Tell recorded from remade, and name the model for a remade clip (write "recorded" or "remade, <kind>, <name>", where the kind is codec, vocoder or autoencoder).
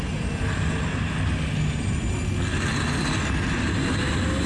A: recorded